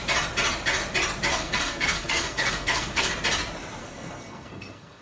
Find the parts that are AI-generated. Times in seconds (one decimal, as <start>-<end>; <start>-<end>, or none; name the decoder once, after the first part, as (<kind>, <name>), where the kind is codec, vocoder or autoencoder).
1.3-3.1 (codec, SNAC); 3.8-5.0